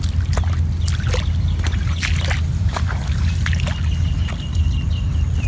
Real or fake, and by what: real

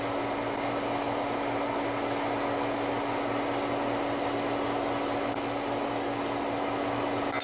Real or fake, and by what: real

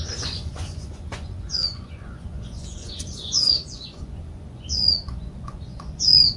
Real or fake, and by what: fake, vocoder, Vocos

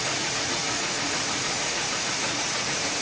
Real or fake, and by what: fake, vocoder, Vocos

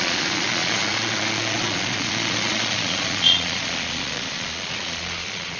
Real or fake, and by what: fake, vocoder, Vocos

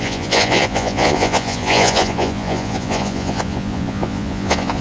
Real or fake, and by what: fake, vocoder, Vocos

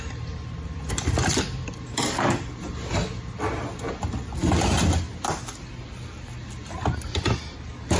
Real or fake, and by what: real